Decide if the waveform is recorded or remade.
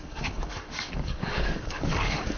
remade